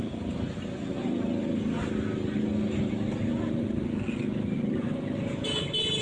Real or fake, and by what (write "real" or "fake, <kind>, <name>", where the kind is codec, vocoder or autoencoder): real